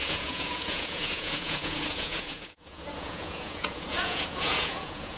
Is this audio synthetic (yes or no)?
yes